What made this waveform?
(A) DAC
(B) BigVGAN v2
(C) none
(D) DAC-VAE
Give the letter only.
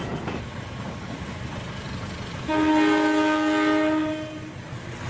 C